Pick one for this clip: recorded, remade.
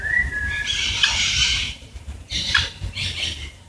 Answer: remade